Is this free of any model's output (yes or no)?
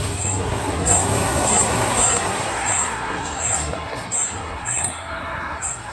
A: no